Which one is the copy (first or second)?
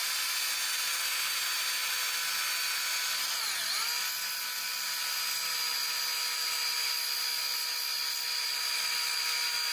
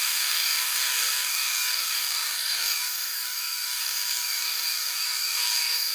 second